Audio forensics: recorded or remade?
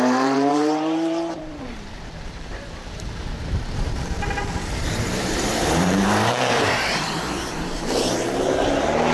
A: remade